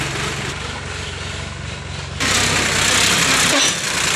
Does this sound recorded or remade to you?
recorded